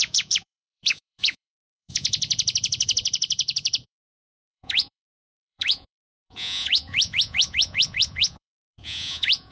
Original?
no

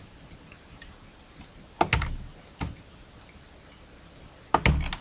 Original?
yes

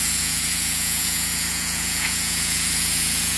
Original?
no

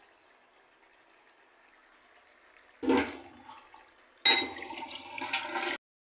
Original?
yes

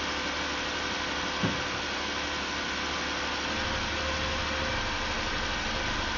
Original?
yes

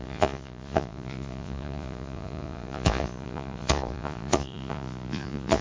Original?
no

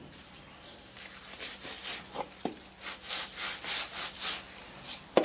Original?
yes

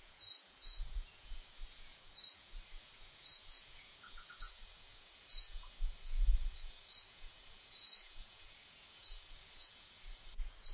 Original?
no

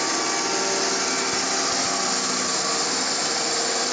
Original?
yes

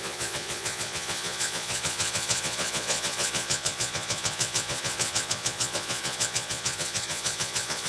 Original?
no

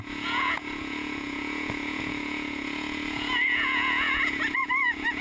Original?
no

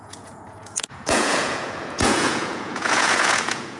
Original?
no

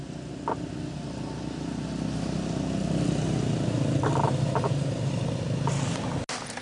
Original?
yes